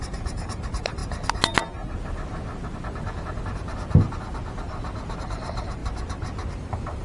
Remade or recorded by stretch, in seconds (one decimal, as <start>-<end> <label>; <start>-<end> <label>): 0.0-1.0 remade; 1.0-5.2 recorded; 5.2-5.8 remade; 5.8-6.5 recorded; 6.5-7.0 remade